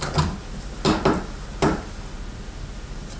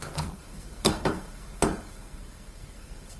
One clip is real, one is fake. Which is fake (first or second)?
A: second